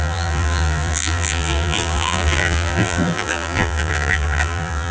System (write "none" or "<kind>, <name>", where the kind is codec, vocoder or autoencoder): vocoder, BigVGAN v2